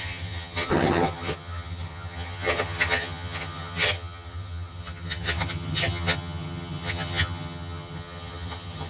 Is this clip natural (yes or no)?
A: no